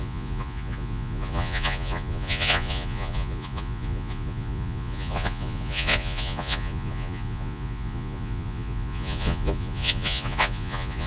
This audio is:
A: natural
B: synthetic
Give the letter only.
B